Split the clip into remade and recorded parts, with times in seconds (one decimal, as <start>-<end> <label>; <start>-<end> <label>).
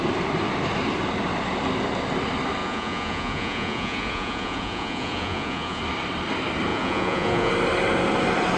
0.0-2.6 recorded; 2.6-5.8 remade; 5.8-6.7 recorded; 6.7-7.5 remade; 7.5-8.6 recorded